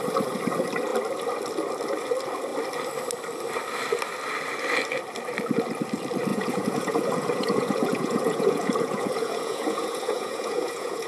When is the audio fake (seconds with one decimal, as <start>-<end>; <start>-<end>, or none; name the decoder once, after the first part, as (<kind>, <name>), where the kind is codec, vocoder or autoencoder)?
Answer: 6.3-11.1 (vocoder, Vocos)